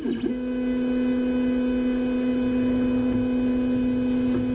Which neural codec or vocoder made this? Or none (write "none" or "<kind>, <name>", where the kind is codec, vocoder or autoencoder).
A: none